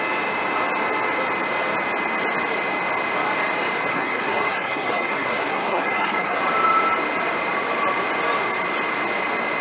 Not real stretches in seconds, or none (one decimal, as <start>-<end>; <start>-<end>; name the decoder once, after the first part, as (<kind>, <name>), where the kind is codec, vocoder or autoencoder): 3.9-6.4 (codec, SNAC)